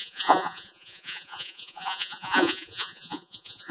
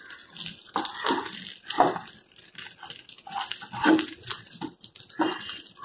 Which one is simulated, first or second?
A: first